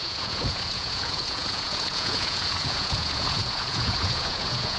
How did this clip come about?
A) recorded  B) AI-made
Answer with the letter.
B